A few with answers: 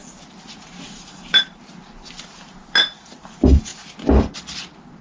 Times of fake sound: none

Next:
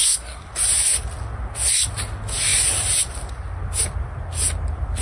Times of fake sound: 0.0-0.5 (codec, SNAC)

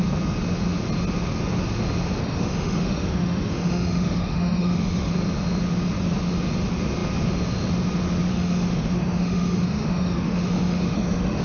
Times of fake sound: 2.2-5.1 (autoencoder, DAC-VAE); 8.3-11.4

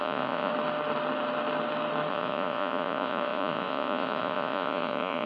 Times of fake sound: 0.0-0.5 (vocoder, Vocos); 2.1-5.3

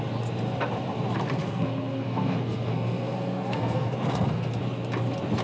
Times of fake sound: 1.4-4.6 (codec, SNAC)

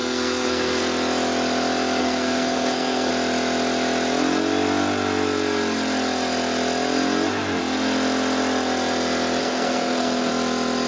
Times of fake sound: 0.0-0.8 (codec, SNAC); 2.0-3.1; 9.4-10.3

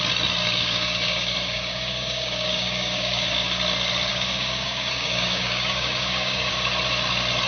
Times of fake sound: 0.4-3.6 (codec, DAC); 4.1-6.5

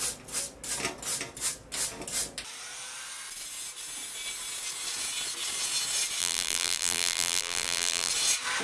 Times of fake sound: 6.2-8.1 (vocoder, BigVGAN v2)